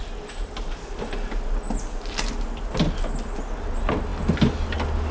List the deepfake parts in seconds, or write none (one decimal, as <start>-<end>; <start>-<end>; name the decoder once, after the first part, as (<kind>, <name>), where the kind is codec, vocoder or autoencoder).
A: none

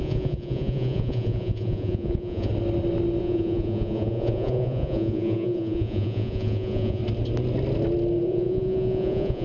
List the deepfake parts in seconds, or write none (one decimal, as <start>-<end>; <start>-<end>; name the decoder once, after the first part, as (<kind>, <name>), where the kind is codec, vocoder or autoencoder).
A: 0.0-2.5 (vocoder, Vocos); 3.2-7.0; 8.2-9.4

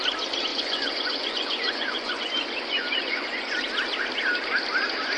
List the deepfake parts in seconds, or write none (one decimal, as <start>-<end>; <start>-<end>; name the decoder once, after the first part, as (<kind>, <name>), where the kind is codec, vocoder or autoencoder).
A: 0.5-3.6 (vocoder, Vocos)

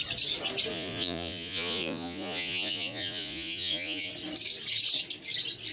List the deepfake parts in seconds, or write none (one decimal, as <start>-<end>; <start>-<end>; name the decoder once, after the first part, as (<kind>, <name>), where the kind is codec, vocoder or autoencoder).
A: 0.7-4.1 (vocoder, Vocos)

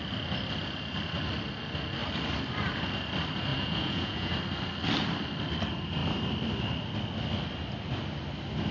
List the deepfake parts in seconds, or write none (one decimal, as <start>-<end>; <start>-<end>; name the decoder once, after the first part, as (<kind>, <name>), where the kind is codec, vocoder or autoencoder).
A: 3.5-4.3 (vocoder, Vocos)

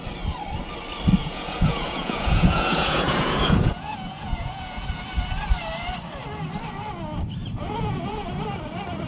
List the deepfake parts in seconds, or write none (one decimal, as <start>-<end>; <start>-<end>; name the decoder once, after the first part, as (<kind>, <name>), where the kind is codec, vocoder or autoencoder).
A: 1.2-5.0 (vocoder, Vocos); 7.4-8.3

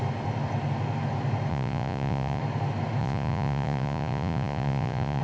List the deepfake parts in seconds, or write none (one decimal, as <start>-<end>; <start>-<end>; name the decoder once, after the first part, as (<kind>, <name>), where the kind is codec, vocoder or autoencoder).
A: 1.5-2.4 (vocoder, Vocos); 3.0-5.2

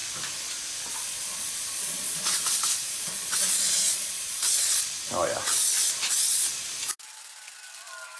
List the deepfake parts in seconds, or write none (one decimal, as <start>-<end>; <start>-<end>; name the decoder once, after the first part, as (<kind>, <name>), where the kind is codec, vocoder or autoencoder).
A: 0.9-4.5 (vocoder, Vocos)